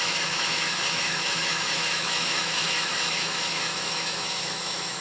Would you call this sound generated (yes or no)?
yes